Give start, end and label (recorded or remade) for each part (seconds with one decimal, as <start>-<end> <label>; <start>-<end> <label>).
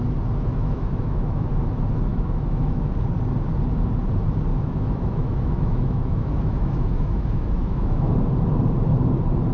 0.0-0.5 recorded; 0.5-1.5 remade; 1.5-2.1 recorded; 2.1-2.9 remade; 2.9-4.5 recorded; 4.5-8.1 remade; 8.1-9.5 recorded